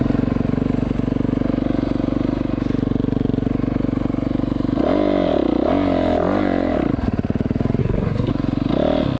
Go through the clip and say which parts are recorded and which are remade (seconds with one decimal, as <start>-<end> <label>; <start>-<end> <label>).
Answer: 0.0-7.8 recorded; 7.8-8.3 remade; 8.3-9.2 recorded